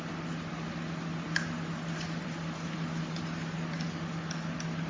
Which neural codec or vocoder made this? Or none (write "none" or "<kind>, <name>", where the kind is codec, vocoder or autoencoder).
none